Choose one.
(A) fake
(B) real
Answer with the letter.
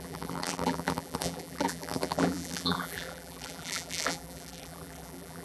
A